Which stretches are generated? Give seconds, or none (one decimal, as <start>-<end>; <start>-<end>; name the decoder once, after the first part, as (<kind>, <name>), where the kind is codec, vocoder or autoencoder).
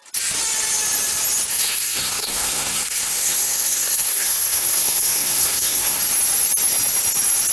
1.5-6.0 (codec, SNAC)